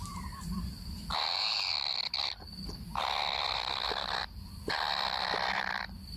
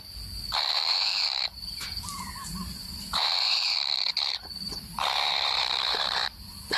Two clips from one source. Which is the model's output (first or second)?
second